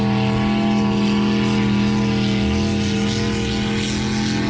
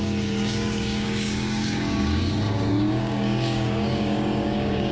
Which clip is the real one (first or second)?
first